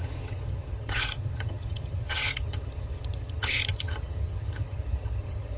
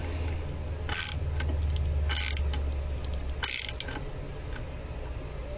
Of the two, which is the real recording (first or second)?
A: second